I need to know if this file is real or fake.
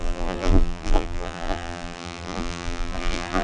fake